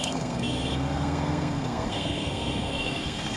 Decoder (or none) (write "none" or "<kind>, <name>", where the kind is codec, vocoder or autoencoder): codec, SNAC